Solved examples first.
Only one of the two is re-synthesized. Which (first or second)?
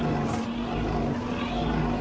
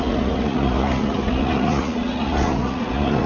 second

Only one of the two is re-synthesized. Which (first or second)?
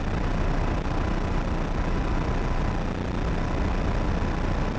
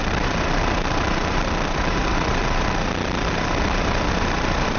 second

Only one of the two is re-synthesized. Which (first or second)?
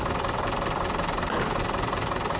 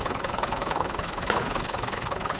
second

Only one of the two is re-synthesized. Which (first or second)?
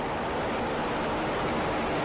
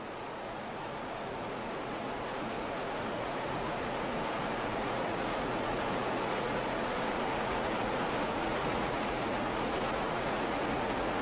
second